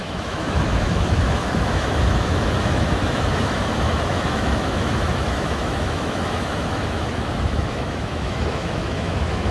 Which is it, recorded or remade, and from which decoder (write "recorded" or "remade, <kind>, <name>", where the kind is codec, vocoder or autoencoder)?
remade, autoencoder, DAC-VAE